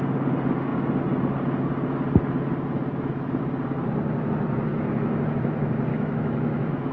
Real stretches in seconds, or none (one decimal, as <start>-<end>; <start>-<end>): 0.0-4.7; 5.3-5.9